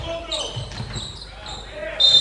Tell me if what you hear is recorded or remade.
recorded